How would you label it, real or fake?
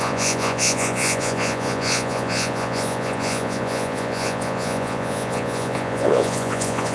fake